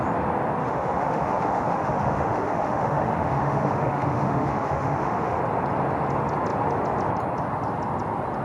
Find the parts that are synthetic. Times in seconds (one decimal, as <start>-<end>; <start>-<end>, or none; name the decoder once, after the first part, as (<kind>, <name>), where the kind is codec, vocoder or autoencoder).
0.6-5.4 (autoencoder, DAC-VAE)